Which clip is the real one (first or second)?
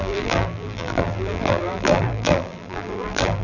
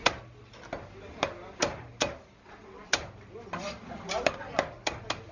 second